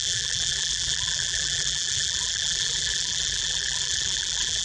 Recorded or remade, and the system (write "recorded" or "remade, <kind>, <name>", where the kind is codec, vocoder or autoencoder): remade, vocoder, BigVGAN v2